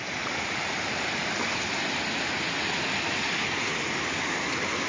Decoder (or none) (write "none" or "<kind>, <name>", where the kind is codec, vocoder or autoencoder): none